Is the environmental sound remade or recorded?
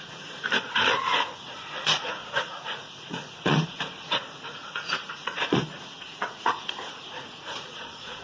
remade